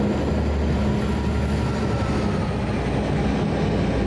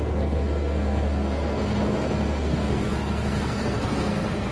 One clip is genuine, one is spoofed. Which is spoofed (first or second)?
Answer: second